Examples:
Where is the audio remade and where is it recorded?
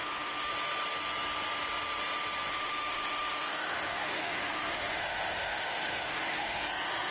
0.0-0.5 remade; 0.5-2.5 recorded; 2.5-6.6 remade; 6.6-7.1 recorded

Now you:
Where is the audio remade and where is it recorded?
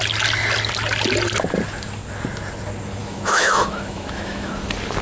0.0-3.0 recorded; 3.0-4.5 remade; 4.5-5.0 recorded